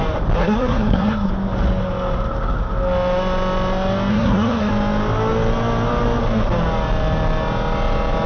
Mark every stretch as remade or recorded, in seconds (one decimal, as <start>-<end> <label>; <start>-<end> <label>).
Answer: 0.0-0.4 recorded; 0.4-1.3 remade; 1.3-4.1 recorded; 4.1-4.7 remade; 4.7-8.3 recorded